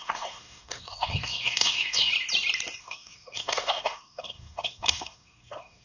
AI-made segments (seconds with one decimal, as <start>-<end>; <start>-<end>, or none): 0.0-2.1; 2.8-5.8